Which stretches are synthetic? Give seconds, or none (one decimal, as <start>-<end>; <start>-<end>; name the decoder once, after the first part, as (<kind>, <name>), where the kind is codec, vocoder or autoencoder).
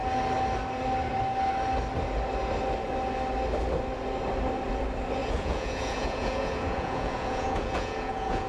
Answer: 5.2-8.5 (vocoder, Vocos)